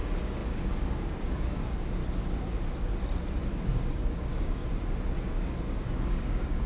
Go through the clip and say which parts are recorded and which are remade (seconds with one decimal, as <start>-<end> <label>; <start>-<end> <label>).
0.0-2.0 remade; 2.0-3.7 recorded; 3.7-4.6 remade; 4.6-5.3 recorded; 5.3-6.7 remade